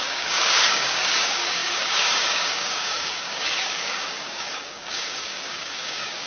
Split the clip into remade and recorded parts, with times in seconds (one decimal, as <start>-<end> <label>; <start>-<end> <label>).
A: 0.0-6.3 remade